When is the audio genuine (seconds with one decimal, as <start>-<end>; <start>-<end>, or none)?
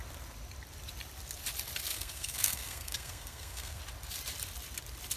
0.0-1.9; 3.8-5.2